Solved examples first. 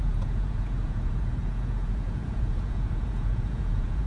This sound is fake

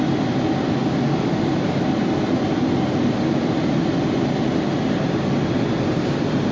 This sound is real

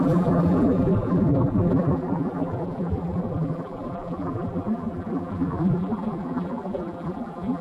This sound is fake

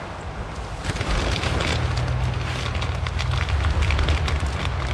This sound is real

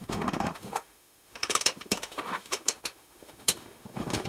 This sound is fake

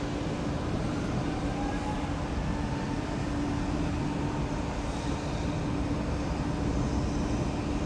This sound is real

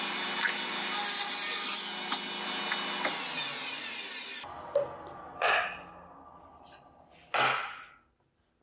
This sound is real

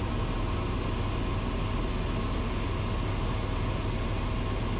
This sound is real